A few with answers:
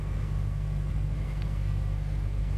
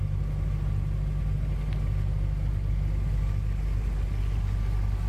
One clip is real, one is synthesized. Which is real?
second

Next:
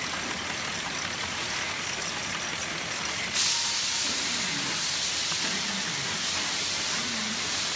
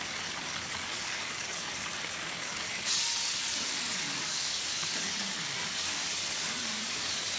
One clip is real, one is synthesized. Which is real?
first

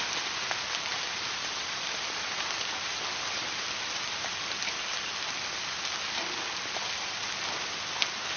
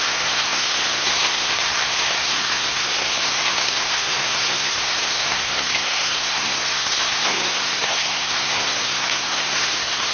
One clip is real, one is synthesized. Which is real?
first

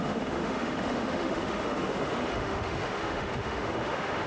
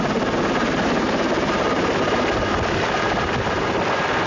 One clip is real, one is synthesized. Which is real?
second